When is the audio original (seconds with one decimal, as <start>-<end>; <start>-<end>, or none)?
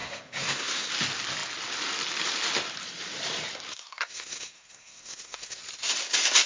0.9-3.7; 5.6-6.5